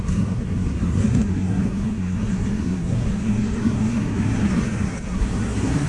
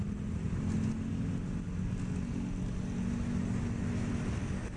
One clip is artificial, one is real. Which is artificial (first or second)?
first